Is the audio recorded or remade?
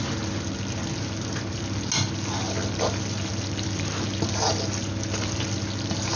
recorded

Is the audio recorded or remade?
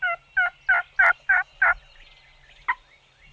recorded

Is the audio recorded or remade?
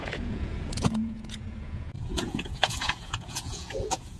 remade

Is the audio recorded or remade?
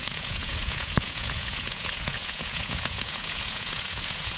remade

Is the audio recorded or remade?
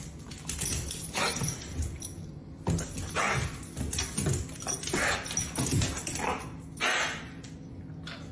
recorded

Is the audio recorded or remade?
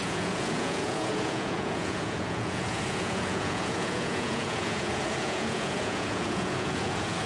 remade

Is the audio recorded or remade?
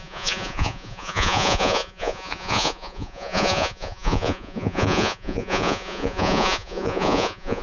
remade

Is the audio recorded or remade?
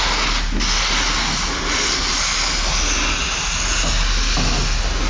recorded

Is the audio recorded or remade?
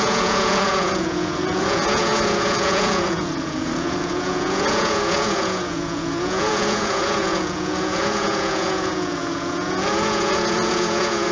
remade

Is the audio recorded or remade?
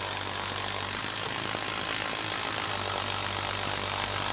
recorded